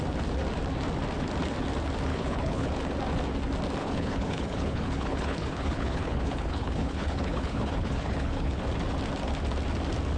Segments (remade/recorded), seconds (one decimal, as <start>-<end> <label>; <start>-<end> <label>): 0.0-2.1 recorded; 2.1-2.7 remade; 2.7-3.8 recorded; 3.8-8.6 remade; 8.6-10.2 recorded